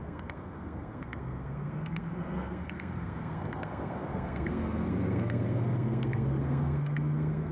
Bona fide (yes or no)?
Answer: no